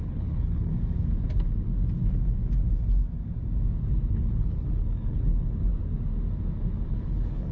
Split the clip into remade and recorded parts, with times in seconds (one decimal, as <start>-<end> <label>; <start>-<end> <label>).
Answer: 0.0-0.7 remade; 0.7-4.1 recorded; 4.1-5.7 remade; 5.7-6.9 recorded; 6.9-7.5 remade